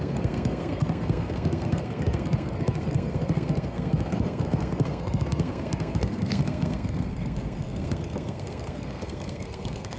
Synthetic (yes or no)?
yes